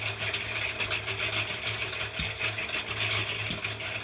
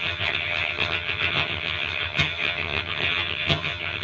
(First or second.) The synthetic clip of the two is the second